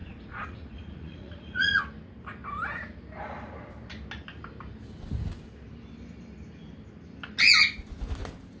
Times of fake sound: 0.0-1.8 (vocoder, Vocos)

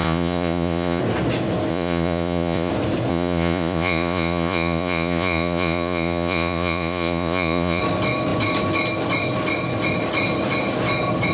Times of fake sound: 0.0-1.0 (vocoder, Vocos); 1.7-2.7; 3.1-7.8